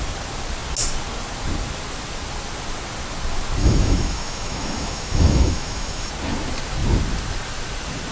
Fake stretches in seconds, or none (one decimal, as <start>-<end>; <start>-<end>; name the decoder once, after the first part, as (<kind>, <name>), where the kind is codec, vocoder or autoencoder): 3.6-6.1 (autoencoder, DAC-VAE)